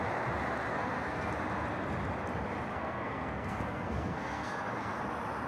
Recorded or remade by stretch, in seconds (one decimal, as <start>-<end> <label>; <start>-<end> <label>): 0.0-0.7 recorded; 0.7-1.3 remade; 1.3-2.7 recorded; 2.7-5.0 remade; 5.0-5.5 recorded